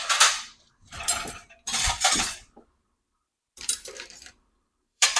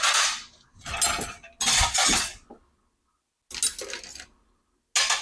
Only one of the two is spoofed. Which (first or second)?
first